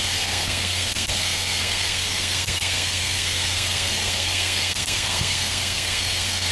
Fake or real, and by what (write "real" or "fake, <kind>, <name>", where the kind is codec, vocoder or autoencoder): fake, codec, SNAC